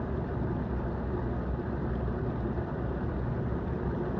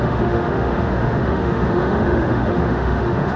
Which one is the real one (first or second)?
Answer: first